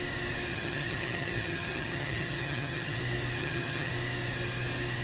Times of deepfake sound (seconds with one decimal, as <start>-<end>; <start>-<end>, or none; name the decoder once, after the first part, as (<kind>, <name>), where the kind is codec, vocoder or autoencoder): 0.5-3.0 (vocoder, HiFi-GAN); 3.4-3.9